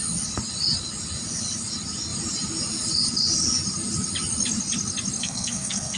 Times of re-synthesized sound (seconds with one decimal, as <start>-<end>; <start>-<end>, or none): 5.2-6.0